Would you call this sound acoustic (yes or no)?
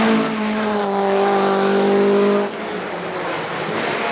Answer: yes